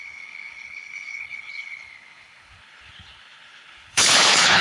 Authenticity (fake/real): fake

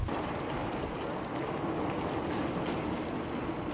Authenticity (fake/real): real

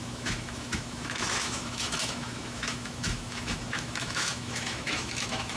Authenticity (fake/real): fake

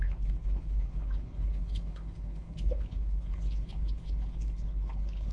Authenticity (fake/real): fake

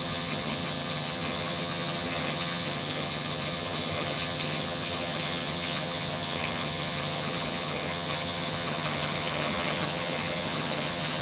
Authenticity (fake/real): fake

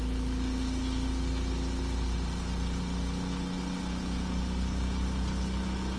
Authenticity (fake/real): real